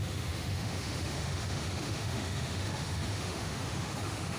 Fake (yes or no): yes